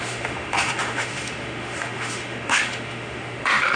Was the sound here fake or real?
fake